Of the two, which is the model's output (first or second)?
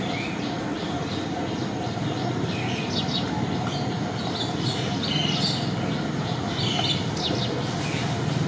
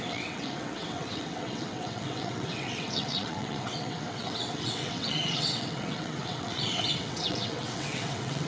second